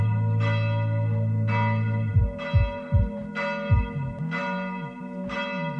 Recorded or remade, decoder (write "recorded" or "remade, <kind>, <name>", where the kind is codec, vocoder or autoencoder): recorded